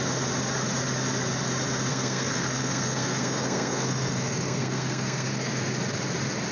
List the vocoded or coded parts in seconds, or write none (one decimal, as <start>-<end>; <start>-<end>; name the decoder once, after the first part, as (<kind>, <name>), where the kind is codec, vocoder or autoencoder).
1.9-5.5 (codec, SNAC)

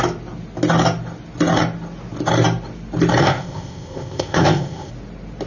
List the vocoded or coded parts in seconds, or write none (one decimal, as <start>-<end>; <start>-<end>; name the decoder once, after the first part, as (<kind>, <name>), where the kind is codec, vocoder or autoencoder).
3.2-4.9 (codec, ZipCodec)

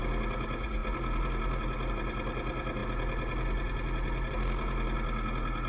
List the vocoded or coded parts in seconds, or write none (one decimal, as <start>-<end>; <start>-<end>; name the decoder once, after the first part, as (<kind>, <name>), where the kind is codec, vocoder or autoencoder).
none

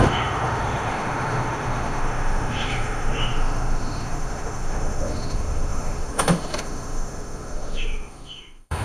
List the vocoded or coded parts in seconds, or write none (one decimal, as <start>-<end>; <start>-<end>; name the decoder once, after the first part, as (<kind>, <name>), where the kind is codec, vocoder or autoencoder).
0.0-8.8 (autoencoder, DAC-VAE)

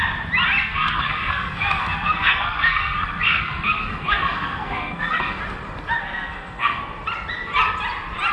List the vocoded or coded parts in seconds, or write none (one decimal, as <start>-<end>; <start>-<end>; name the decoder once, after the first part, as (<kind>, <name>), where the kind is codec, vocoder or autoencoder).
0.6-5.4 (codec, SNAC); 6.0-6.8

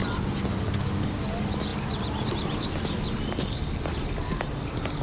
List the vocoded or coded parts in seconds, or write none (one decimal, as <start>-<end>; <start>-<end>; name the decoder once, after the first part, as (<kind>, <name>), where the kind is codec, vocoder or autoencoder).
none

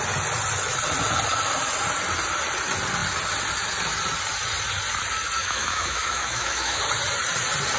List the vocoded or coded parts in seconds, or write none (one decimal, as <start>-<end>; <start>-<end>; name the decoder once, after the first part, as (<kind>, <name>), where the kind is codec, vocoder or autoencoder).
5.4-6.8 (autoencoder, DAC-VAE)